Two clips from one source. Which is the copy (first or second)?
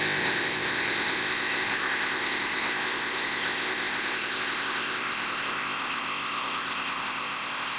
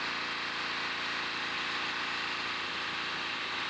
first